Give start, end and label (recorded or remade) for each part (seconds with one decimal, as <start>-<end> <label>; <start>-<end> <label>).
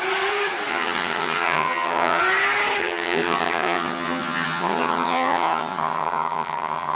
0.0-0.7 recorded; 0.7-2.2 remade; 2.2-2.8 recorded; 2.8-7.0 remade